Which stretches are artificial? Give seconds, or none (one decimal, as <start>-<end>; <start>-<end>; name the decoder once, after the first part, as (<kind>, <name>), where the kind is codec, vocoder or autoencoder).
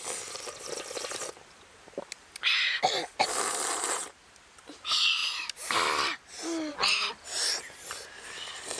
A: none